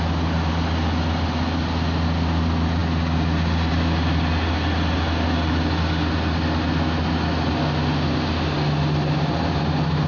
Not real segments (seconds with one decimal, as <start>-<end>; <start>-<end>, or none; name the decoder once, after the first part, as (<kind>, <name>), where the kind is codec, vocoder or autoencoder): none